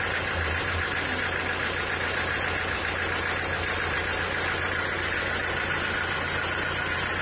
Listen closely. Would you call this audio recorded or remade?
recorded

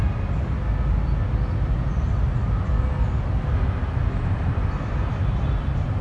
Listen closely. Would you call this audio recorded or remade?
recorded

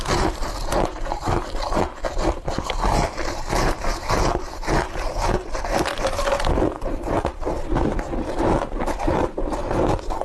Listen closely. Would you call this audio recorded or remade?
recorded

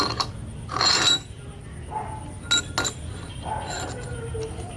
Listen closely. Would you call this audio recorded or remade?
recorded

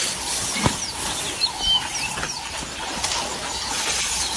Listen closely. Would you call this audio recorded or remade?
recorded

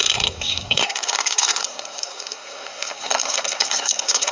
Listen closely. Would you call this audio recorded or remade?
remade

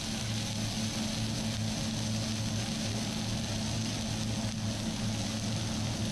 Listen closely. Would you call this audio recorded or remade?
recorded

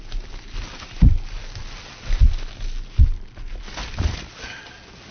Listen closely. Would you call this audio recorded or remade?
recorded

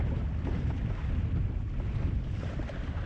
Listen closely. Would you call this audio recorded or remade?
recorded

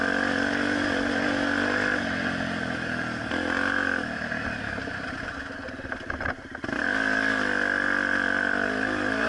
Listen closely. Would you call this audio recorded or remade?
recorded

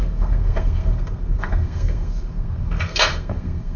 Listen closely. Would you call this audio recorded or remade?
remade